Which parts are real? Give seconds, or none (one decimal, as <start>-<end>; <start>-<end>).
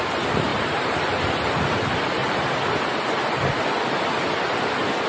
0.0-0.5; 1.2-2.2; 2.9-5.1